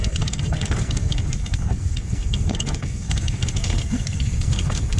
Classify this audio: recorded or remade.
remade